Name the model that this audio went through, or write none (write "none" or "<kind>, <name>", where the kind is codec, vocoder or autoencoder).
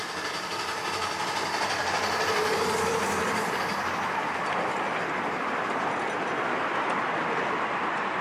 none